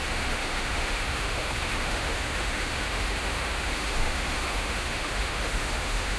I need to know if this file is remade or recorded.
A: remade